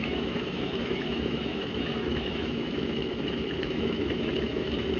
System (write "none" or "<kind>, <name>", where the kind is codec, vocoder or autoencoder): autoencoder, DAC-VAE